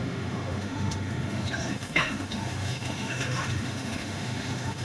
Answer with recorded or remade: remade